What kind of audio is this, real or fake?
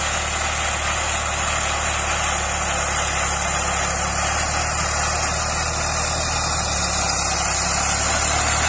real